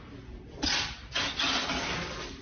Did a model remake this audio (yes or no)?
no